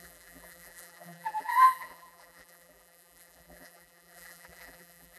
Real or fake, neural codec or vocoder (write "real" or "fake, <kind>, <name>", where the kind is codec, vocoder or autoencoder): fake, vocoder, BigVGAN v2